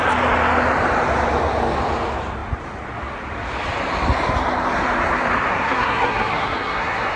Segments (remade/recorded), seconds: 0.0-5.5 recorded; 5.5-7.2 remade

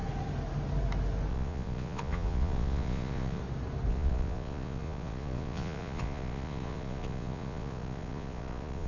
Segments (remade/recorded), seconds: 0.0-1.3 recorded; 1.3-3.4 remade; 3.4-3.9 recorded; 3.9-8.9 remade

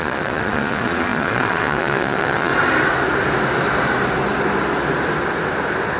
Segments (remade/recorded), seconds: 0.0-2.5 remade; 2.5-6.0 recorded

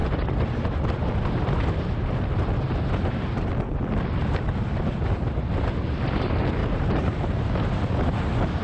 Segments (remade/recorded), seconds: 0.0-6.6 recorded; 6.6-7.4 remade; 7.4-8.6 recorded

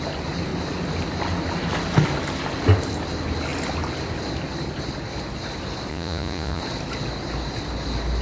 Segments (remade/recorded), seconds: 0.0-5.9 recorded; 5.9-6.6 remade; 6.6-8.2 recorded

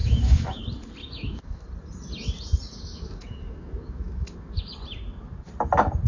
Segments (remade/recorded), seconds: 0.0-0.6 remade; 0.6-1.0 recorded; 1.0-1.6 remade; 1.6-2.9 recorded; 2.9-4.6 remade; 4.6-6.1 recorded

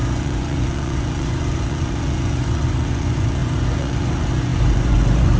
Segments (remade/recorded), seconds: 0.0-5.4 remade